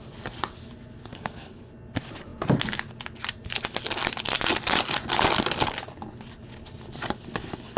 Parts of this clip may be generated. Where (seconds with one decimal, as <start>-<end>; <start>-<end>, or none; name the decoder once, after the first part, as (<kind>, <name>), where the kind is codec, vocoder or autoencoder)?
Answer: 1.1-1.7 (codec, SNAC)